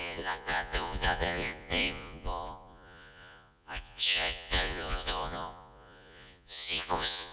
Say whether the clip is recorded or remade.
remade